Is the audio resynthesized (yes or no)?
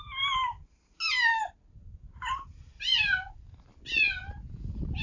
no